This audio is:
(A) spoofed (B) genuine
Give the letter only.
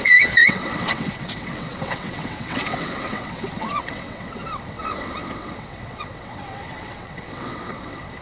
A